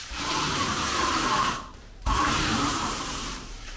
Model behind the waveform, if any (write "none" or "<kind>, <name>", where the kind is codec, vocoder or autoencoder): vocoder, BigVGAN v2